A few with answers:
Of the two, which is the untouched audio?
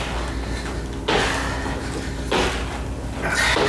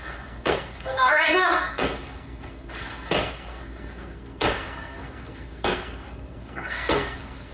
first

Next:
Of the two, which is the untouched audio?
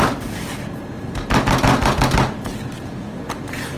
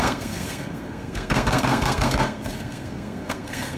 first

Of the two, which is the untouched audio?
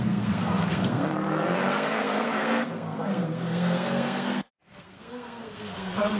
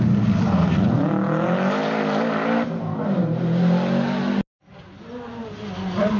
second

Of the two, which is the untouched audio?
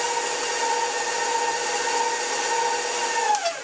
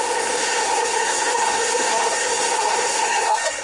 first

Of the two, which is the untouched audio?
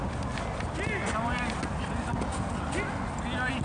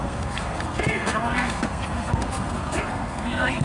first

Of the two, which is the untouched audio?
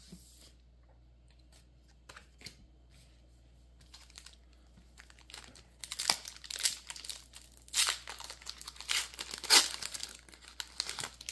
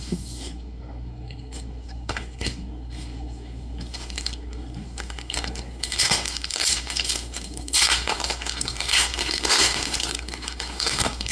first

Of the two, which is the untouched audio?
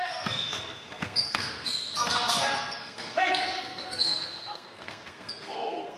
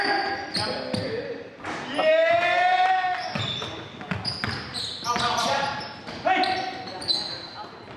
second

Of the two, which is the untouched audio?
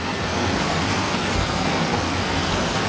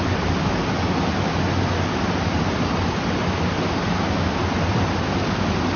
second